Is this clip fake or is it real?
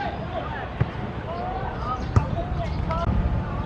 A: fake